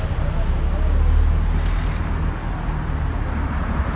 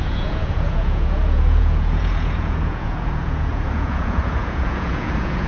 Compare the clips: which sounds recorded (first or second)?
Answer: first